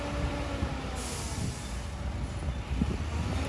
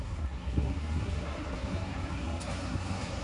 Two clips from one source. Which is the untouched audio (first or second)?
first